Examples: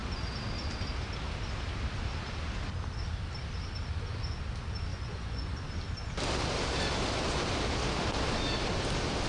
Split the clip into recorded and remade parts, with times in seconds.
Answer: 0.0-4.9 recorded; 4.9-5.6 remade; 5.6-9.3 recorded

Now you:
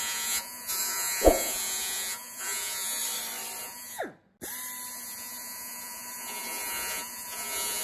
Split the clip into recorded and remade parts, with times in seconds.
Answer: 0.0-3.0 remade; 3.0-3.6 recorded; 3.6-4.0 remade; 4.0-4.9 recorded; 4.9-7.8 remade